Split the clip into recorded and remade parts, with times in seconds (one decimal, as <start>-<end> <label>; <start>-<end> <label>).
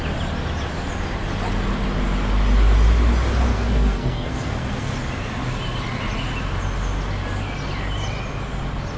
0.0-3.5 recorded; 3.5-4.9 remade; 4.9-9.0 recorded